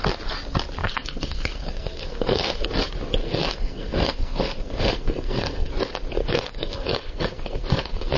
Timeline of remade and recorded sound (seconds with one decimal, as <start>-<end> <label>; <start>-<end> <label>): 0.0-0.8 recorded; 0.8-2.6 remade; 2.6-3.2 recorded; 3.2-5.7 remade; 5.7-6.2 recorded; 6.2-8.2 remade